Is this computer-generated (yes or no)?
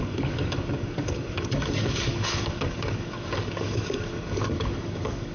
yes